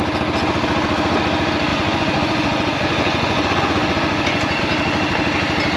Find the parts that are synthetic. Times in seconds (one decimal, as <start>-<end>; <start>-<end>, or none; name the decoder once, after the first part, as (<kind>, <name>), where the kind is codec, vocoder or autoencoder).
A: 1.7-4.6 (vocoder, Vocos)